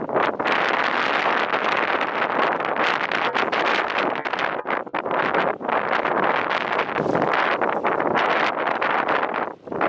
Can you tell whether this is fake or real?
real